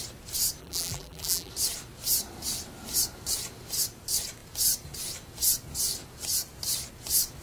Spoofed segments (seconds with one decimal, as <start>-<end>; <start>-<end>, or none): 0.6-1.5